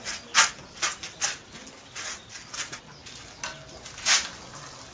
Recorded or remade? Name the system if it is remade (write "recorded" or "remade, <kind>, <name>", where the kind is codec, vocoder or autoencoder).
recorded